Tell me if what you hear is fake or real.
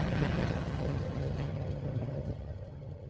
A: fake